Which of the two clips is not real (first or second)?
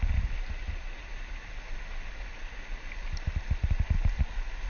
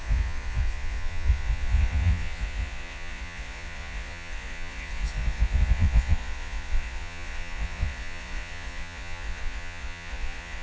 second